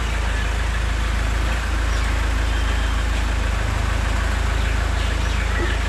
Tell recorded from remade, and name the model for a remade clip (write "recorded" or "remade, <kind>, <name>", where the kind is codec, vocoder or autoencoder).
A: recorded